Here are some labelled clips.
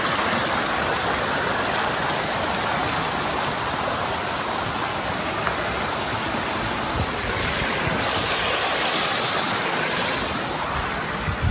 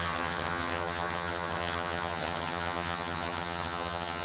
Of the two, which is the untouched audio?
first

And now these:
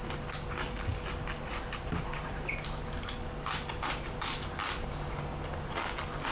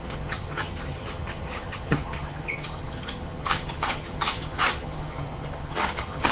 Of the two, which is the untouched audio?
first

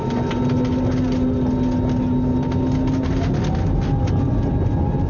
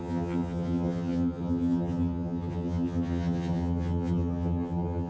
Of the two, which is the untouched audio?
first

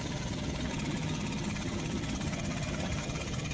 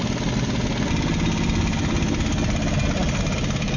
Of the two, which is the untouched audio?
second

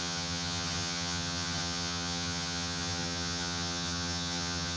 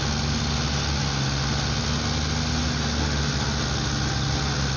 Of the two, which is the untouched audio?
second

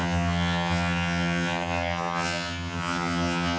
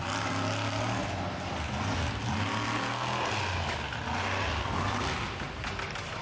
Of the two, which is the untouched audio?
second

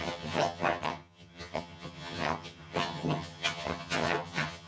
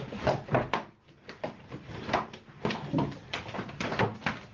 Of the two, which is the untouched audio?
second